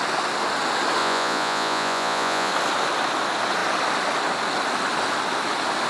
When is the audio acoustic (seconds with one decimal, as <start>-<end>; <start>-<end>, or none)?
0.0-1.0; 2.5-5.9